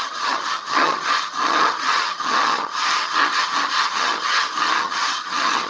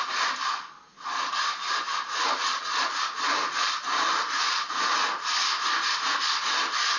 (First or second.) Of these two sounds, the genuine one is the second